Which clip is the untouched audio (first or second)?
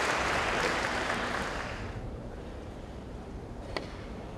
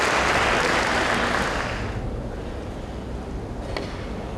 second